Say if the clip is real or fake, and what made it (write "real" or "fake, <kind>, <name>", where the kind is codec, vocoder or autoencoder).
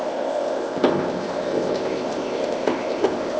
fake, codec, ZipCodec